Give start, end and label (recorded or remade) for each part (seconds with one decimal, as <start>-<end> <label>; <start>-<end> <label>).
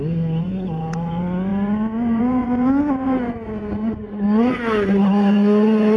0.0-6.0 remade